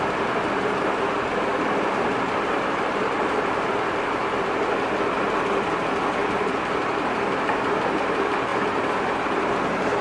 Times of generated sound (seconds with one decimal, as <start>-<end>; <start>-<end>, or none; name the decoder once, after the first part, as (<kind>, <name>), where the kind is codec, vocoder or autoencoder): 6.2-7.4 (vocoder, BigVGAN v2); 8.5-9.0